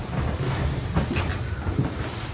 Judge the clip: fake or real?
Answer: real